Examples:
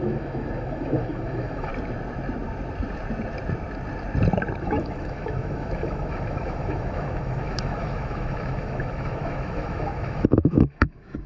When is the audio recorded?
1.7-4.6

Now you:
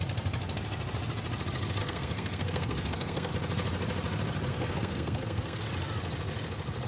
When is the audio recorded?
0.0-1.8; 3.3-4.5; 5.6-6.9

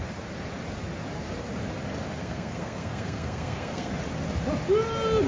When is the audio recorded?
0.0-2.2; 3.9-5.3

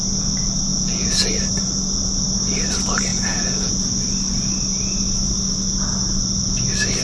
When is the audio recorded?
0.0-0.7; 1.3-3.1; 3.7-7.0

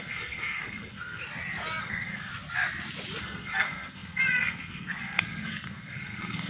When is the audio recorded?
1.2-1.8; 2.3-3.2

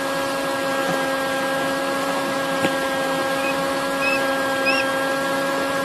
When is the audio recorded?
0.0-5.8